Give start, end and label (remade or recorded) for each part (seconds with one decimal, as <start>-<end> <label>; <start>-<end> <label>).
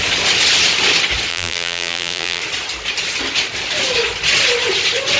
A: 0.0-1.3 recorded; 1.3-2.4 remade; 2.4-5.2 recorded